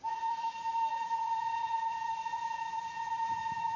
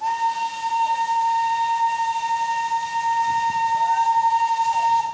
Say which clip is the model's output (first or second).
first